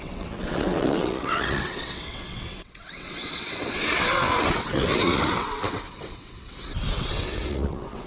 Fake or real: fake